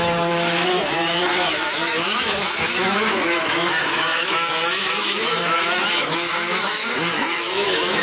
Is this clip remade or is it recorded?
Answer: remade